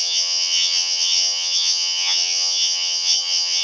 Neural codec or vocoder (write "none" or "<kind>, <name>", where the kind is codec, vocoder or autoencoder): vocoder, HiFi-GAN